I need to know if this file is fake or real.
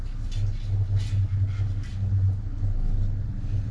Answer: real